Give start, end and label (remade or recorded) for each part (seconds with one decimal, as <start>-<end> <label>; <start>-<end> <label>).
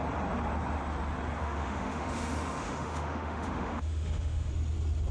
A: 0.0-1.4 recorded; 1.4-4.5 remade; 4.5-5.1 recorded